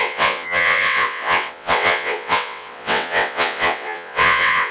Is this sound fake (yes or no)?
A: yes